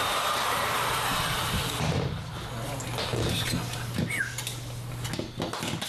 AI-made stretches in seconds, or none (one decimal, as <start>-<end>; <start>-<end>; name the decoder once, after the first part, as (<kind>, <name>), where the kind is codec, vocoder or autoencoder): 0.0-2.2 (vocoder, BigVGAN v2); 3.1-4.0